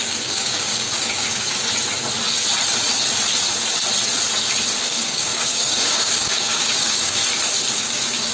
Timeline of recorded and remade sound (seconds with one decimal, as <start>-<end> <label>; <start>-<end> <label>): 0.0-1.7 remade; 1.7-4.8 recorded; 4.8-7.2 remade; 7.2-7.7 recorded; 7.7-8.3 remade